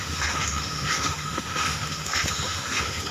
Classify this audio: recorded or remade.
remade